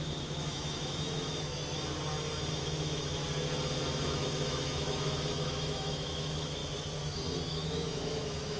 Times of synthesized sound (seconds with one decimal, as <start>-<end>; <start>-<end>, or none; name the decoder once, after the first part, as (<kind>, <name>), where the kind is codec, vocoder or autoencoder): 0.0-1.6 (autoencoder, DAC-VAE); 2.5-3.2; 4.0-6.6; 7.5-8.6